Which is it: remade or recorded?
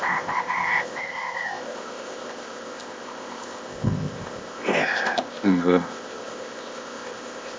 remade